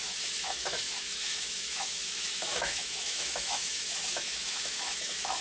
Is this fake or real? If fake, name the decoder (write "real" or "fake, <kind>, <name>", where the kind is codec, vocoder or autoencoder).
fake, autoencoder, DAC-VAE